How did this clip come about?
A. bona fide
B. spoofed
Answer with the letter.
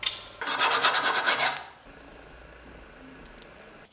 A